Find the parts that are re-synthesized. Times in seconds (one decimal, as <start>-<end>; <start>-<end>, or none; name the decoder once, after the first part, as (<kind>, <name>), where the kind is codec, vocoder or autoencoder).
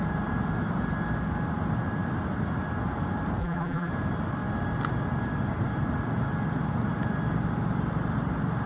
3.4-3.9 (vocoder, BigVGAN v2)